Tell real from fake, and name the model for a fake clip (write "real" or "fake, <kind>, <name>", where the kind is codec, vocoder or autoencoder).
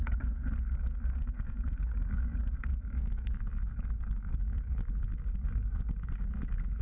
fake, codec, DAC